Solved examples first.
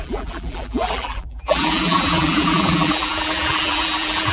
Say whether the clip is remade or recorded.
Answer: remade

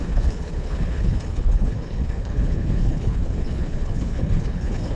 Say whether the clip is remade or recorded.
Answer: remade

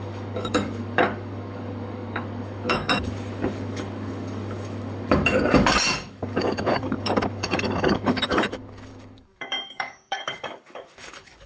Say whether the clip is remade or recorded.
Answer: remade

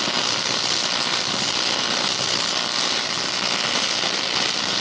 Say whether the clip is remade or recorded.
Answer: recorded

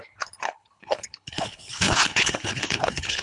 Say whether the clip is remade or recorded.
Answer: remade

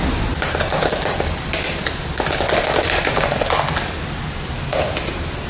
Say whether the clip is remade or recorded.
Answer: recorded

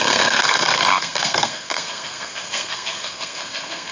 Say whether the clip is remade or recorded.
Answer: remade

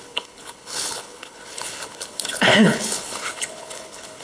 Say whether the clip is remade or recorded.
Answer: remade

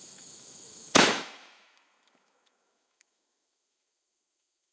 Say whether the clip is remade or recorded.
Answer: remade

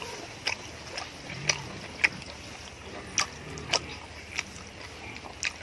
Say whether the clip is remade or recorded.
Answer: recorded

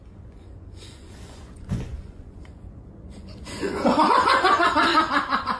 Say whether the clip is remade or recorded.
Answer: remade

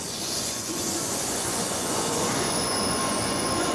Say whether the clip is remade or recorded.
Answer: remade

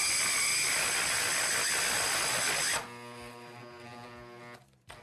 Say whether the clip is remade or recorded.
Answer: recorded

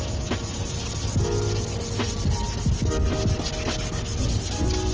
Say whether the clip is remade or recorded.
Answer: recorded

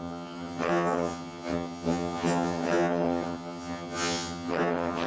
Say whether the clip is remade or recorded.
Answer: remade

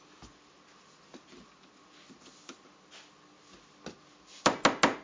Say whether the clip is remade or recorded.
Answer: recorded